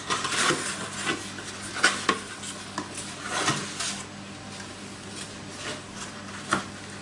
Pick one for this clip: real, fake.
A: real